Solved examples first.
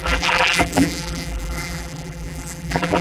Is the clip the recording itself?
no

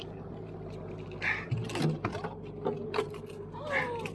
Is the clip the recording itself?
yes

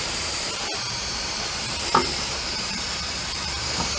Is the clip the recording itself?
no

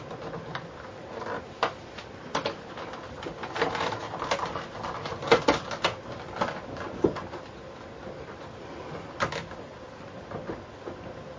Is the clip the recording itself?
yes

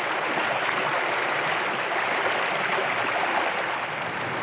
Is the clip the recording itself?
yes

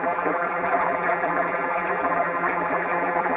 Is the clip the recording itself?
no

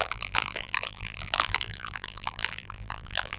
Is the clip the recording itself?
no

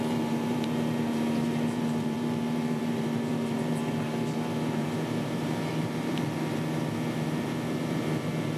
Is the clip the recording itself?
no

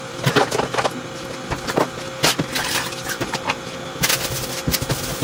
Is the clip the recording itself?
yes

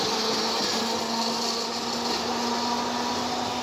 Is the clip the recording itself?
yes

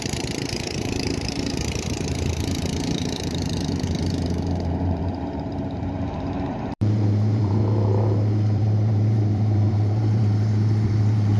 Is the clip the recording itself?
no